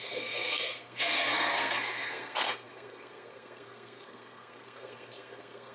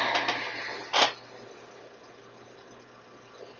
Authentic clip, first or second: second